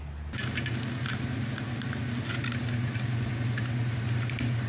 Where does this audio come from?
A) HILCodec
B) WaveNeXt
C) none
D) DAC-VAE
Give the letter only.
C